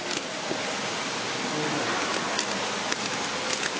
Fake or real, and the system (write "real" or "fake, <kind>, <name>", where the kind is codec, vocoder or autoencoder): real